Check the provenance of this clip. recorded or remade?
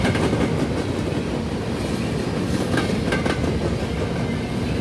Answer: recorded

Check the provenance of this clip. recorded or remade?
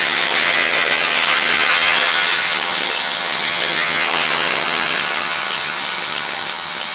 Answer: remade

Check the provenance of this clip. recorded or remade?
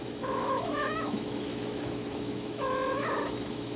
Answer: remade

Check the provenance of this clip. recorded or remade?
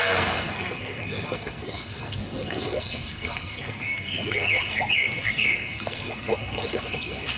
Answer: remade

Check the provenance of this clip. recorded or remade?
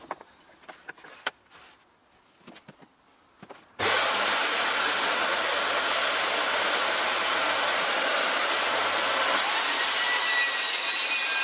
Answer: recorded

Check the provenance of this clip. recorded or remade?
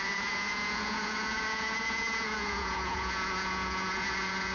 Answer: remade